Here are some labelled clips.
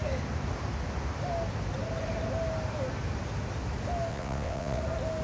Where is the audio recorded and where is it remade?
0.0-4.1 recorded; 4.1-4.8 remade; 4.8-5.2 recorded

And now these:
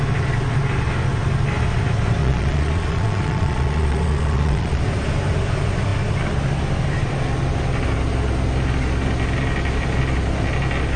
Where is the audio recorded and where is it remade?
0.0-2.2 recorded; 2.2-4.8 remade; 4.8-11.0 recorded

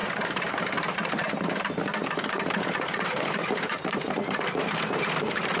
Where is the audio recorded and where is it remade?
0.0-5.6 remade

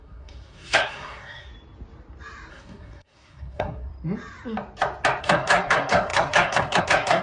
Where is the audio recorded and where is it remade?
0.0-1.5 remade; 1.5-2.5 recorded; 2.5-3.9 remade; 3.9-5.2 recorded; 5.2-7.2 remade

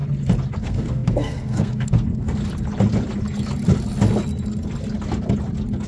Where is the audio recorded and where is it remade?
0.0-0.6 recorded; 0.6-2.4 remade; 2.4-5.9 recorded

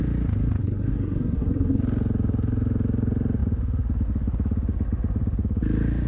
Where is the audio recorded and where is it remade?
0.0-0.6 recorded; 0.6-1.8 remade; 1.8-6.1 recorded

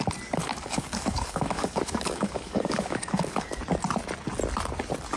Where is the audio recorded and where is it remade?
0.0-0.5 recorded; 0.5-3.6 remade; 3.6-5.2 recorded